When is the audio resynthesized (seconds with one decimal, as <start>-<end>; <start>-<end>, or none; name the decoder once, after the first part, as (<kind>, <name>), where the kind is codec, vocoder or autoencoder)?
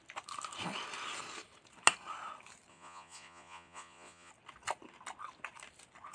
2.7-4.3 (vocoder, Vocos)